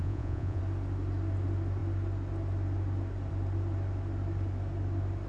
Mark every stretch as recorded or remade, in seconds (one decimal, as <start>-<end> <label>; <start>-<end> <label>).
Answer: 0.0-0.6 remade; 0.6-5.3 recorded